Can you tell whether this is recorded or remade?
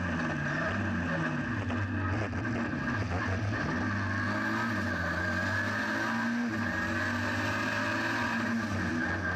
recorded